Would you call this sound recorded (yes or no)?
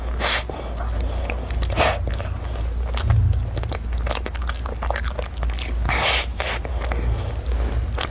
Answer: yes